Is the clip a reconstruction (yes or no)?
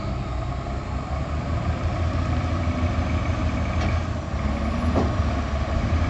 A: no